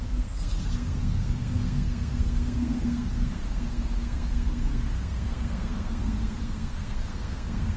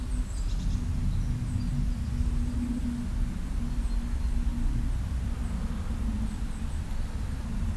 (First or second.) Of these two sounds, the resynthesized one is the first